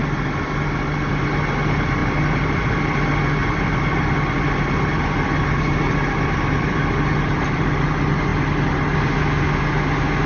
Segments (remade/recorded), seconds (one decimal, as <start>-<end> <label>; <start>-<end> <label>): 0.0-2.0 recorded; 2.0-3.0 remade; 3.0-3.4 recorded; 3.4-7.9 remade; 7.9-10.3 recorded